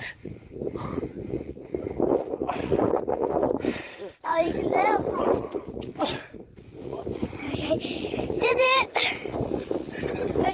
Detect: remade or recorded remade